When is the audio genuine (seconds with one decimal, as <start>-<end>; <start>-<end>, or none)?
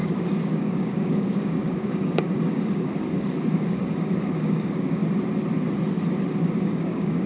5.0-6.5